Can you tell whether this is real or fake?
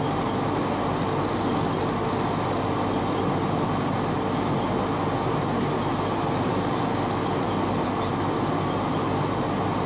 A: real